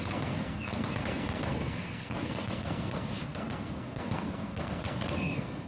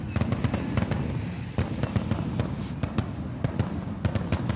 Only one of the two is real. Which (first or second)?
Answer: second